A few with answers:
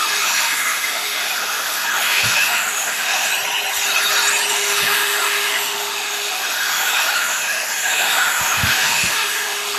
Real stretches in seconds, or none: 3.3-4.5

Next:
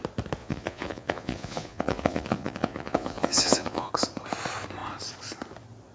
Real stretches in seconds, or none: 0.0-0.4; 3.9-5.9